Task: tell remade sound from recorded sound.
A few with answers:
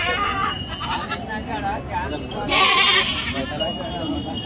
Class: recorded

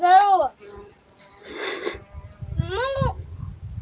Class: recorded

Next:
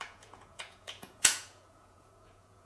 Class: remade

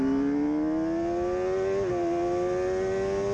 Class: recorded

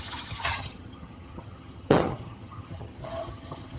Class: remade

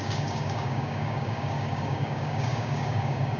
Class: remade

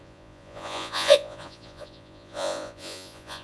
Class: remade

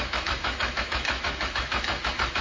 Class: remade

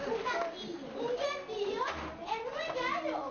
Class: recorded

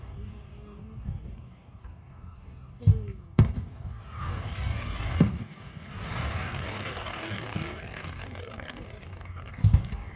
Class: remade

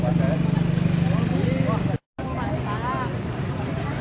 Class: recorded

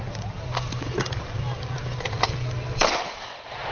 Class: remade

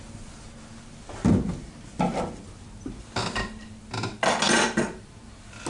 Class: recorded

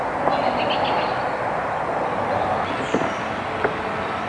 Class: recorded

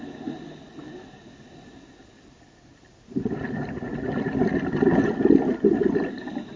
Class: recorded